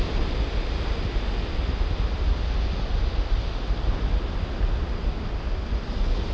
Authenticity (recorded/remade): recorded